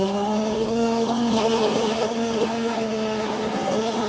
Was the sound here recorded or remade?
remade